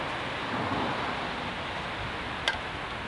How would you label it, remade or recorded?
recorded